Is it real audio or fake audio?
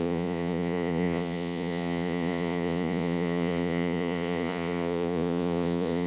fake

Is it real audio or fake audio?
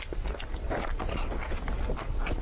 real